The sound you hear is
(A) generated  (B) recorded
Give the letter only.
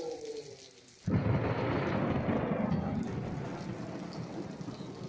B